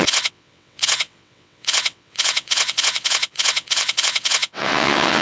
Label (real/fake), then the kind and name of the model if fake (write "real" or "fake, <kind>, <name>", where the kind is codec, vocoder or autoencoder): fake, vocoder, WaveNeXt